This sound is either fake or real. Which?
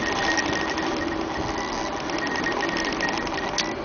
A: real